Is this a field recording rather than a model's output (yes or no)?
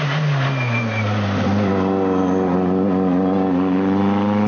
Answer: yes